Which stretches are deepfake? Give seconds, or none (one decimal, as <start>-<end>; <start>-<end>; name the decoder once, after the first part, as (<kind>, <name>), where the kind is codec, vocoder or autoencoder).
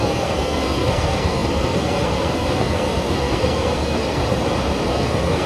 0.0-4.2 (codec, SNAC); 4.9-5.5